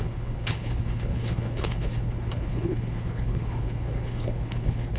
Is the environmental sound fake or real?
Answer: fake